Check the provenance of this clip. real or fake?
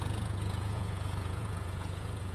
fake